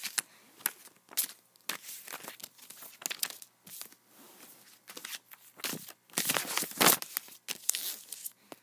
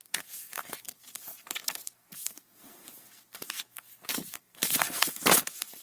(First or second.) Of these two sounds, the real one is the first